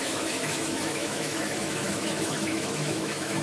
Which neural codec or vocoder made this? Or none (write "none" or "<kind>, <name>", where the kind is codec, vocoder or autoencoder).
autoencoder, DAC-VAE